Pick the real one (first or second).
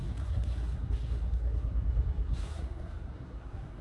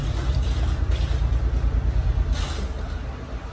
second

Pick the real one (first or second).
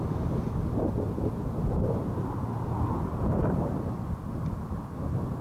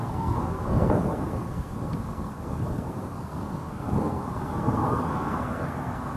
first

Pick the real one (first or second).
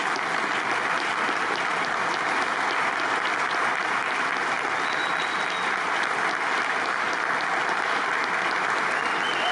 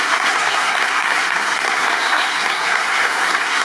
first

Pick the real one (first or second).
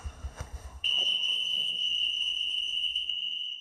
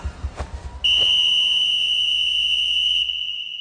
second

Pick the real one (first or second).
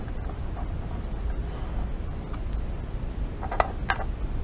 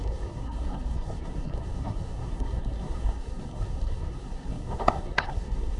first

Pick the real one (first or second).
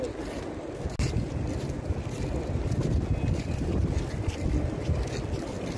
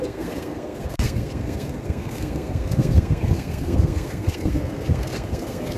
first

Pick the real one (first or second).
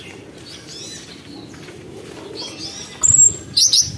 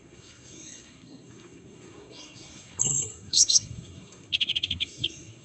first